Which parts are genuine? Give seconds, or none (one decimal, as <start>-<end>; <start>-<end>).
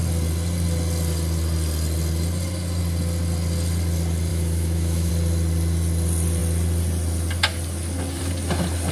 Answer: 0.0-4.3; 5.1-8.9